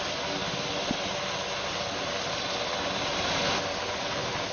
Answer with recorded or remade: recorded